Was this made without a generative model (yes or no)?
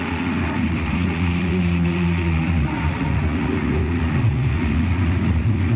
no